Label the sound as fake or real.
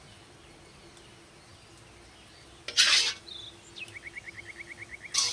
real